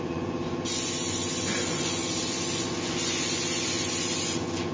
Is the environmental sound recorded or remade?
remade